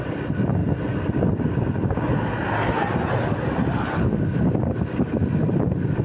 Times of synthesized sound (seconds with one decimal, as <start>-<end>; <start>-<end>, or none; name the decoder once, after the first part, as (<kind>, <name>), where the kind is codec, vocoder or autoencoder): none